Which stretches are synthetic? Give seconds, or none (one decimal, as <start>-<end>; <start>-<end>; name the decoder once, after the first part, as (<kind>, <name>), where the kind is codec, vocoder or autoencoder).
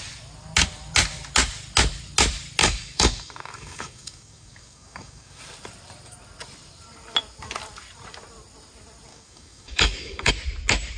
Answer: 2.6-5.4 (codec, DAC); 9.1-10.3